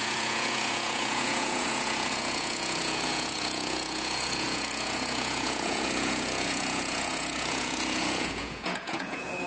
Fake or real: fake